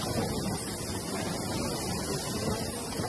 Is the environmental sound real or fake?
real